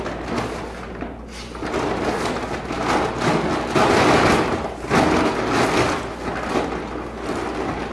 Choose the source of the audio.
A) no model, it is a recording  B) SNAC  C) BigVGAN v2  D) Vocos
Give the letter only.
A